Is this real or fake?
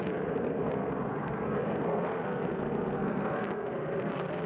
fake